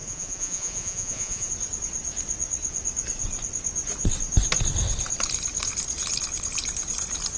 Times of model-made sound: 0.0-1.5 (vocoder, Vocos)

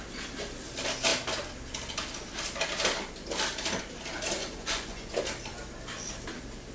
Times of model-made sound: 4.4-5.2 (vocoder, Vocos)

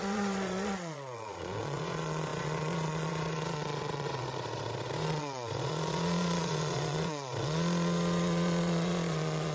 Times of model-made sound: 0.0-9.5 (vocoder, Vocos)

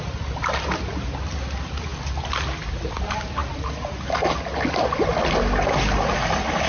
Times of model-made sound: none

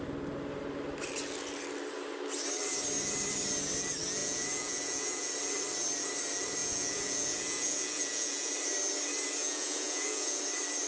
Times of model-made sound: 4.2-5.3 (vocoder, Vocos); 6.6-8.5; 9.4-10.4

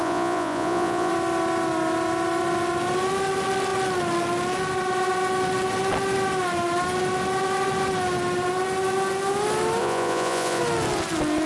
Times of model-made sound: 0.0-1.1 (vocoder, Vocos); 9.8-10.6

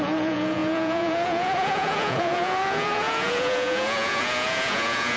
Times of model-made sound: 0.0-5.2 (vocoder, Vocos)

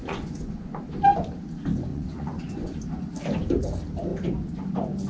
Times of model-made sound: 0.0-0.8 (vocoder, Vocos); 1.9-2.8